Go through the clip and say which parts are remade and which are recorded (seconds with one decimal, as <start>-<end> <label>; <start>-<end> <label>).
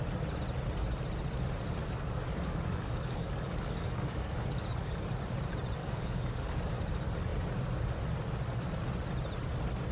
0.0-1.8 recorded; 1.8-5.0 remade; 5.0-5.8 recorded; 5.8-6.7 remade; 6.7-9.9 recorded